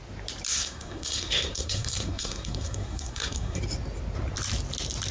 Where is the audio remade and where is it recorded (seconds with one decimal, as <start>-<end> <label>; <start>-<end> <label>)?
0.0-0.5 recorded; 0.5-3.6 remade; 3.6-5.1 recorded